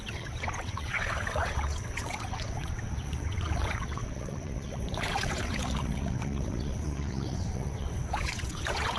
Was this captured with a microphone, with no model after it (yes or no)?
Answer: no